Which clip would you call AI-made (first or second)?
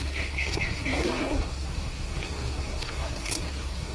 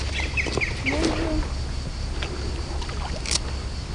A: first